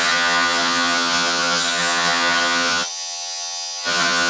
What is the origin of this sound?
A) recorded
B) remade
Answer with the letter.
B